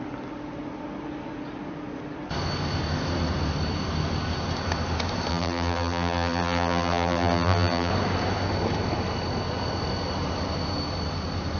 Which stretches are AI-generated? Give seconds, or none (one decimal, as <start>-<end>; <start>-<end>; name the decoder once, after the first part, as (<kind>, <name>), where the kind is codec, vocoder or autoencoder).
5.3-7.9 (vocoder, BigVGAN v2)

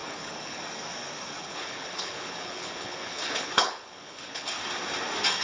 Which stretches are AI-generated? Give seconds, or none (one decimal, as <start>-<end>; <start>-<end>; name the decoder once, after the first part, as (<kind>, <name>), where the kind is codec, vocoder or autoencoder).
0.0-0.6 (codec, HILCodec); 1.4-4.6

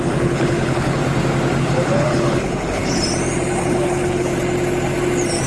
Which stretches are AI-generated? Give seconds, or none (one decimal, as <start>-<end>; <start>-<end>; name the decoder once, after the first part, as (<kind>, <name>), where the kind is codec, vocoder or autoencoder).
0.0-1.0 (codec, HILCodec); 1.6-2.8; 3.6-4.3

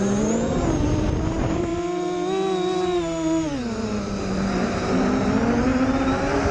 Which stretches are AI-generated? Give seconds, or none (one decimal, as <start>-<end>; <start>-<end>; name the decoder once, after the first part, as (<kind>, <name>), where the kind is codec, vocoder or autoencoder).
0.0-1.7 (vocoder, BigVGAN v2); 4.3-6.5

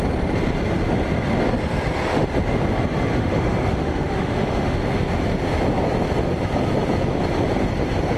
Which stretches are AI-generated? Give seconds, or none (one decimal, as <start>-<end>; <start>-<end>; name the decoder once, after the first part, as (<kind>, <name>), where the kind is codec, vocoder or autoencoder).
3.1-5.0 (autoencoder, DAC-VAE)

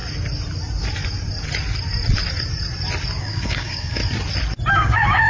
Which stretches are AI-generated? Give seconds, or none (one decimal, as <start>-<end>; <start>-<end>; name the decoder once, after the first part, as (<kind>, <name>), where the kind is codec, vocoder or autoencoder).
3.2-4.0 (codec, DAC); 4.7-5.3

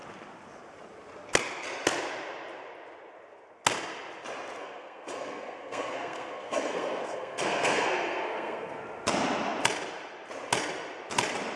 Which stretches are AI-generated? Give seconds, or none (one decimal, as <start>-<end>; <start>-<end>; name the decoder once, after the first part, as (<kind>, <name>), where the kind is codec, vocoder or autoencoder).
4.6-8.8 (codec, SNAC)